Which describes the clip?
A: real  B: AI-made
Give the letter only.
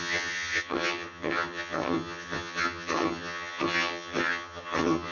B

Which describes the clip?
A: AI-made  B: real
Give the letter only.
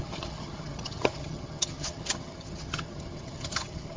A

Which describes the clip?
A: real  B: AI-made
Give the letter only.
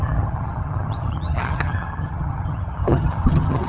B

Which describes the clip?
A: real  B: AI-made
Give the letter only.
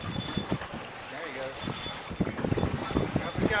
A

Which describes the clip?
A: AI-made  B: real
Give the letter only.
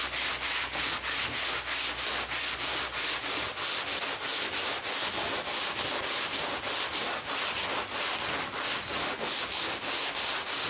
B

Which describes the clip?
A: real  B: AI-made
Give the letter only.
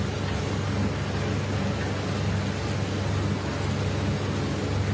A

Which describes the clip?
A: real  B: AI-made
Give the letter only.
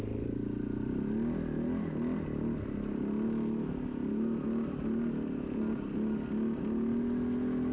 A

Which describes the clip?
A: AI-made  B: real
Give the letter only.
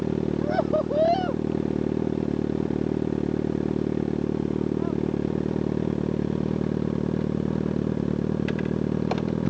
B